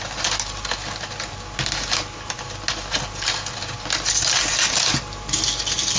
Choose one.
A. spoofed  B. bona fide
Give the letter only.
B